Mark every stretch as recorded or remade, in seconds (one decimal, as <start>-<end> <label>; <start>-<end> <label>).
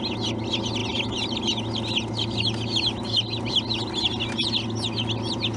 0.0-5.6 recorded